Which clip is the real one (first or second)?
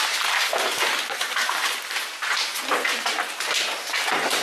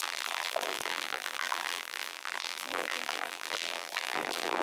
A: first